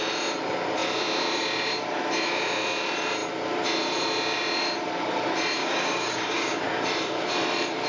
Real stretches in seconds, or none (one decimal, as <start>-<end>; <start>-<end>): 0.0-5.6; 6.6-7.9